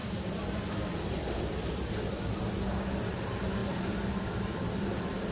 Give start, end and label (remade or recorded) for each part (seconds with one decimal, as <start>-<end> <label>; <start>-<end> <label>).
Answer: 0.0-0.7 remade; 0.7-3.6 recorded; 3.6-5.3 remade